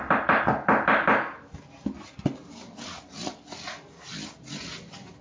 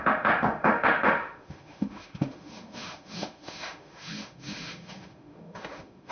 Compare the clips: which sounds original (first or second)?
first